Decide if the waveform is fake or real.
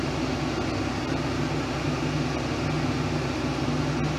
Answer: real